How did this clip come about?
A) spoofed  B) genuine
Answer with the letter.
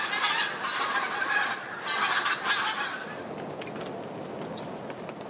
B